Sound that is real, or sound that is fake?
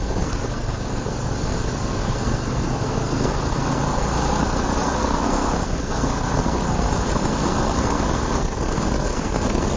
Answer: fake